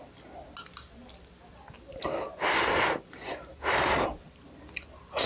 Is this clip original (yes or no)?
yes